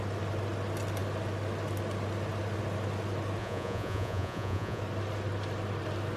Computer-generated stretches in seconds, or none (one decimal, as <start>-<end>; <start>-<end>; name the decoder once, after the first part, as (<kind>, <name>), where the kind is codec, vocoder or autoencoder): 3.4-4.8 (vocoder, Vocos)